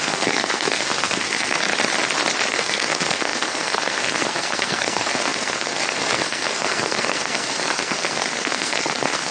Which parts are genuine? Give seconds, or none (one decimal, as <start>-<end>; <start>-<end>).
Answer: 1.7-2.5